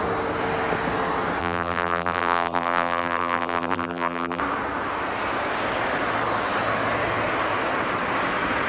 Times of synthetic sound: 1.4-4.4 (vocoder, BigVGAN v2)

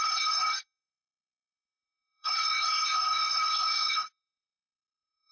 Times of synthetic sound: 0.0-5.3 (codec, SNAC)

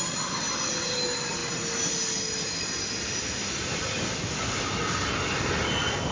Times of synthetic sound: none

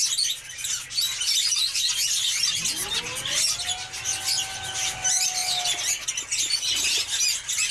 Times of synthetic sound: none

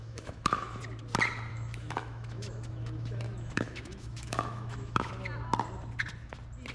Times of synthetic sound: 0.0-0.8 (autoencoder, DAC-VAE); 1.5-5.1